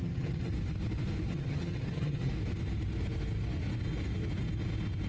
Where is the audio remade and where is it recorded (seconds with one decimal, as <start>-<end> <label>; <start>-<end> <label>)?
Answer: 0.0-0.5 remade; 0.5-1.3 recorded; 1.3-2.3 remade; 2.3-5.1 recorded